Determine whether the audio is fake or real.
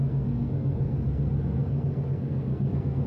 fake